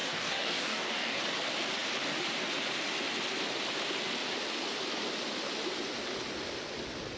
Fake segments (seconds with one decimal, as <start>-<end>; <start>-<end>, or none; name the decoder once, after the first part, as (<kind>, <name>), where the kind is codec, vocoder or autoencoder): 0.0-1.2 (codec, DAC)